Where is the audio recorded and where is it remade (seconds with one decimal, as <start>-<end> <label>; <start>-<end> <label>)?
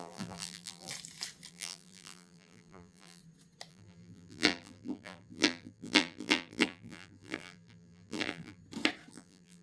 0.0-0.9 remade; 0.9-1.5 recorded; 1.5-3.2 remade; 3.2-3.7 recorded; 3.7-8.6 remade; 8.6-9.1 recorded; 9.1-9.6 remade